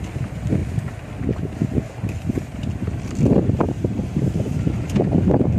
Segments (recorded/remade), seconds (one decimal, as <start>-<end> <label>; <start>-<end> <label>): 0.0-4.0 recorded; 4.0-5.6 remade